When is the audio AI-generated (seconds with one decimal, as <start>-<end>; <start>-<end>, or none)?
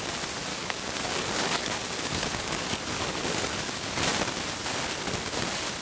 0.5-4.0